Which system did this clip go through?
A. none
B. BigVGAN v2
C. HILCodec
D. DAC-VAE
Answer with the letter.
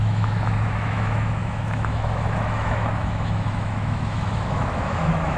D